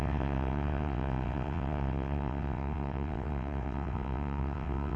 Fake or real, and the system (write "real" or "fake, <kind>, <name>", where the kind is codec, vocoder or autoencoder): fake, vocoder, WaveNeXt